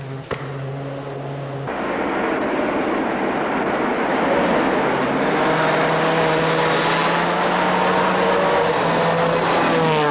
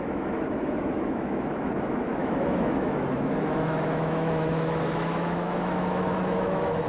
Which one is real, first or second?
first